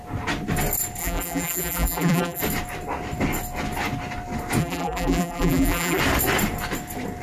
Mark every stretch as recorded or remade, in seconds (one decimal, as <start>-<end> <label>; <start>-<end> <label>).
0.0-1.0 recorded; 1.0-2.4 remade; 2.4-4.6 recorded; 4.6-6.0 remade; 6.0-7.2 recorded

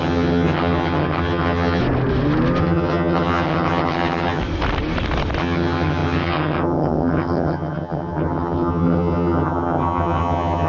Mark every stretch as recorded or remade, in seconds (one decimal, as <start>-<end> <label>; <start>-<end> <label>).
0.0-1.8 remade; 1.8-2.6 recorded; 2.6-4.4 remade; 4.4-5.4 recorded; 5.4-10.7 remade

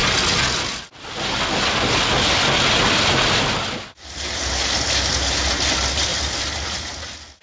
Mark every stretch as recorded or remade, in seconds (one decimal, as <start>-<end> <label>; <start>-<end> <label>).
0.0-7.4 recorded

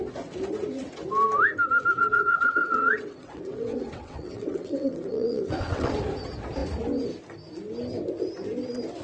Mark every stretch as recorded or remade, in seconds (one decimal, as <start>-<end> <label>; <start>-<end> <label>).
0.0-2.0 recorded; 2.0-5.9 remade; 5.9-9.0 recorded

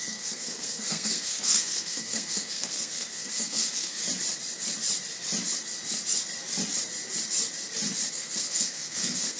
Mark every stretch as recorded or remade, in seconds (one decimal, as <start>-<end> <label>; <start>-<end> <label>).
0.0-4.0 remade; 4.0-8.1 recorded; 8.1-9.4 remade

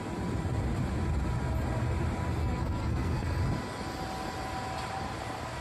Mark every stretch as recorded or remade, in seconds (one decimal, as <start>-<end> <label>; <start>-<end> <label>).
0.0-2.4 recorded; 2.4-3.4 remade; 3.4-5.6 recorded

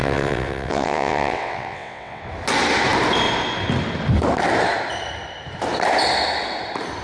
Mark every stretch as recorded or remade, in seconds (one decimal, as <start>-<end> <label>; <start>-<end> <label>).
0.0-2.2 remade; 2.2-7.0 recorded